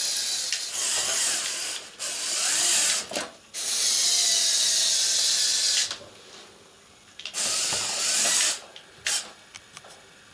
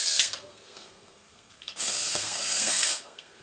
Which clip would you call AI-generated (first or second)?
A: second